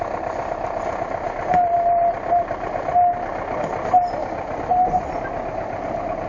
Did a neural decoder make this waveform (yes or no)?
no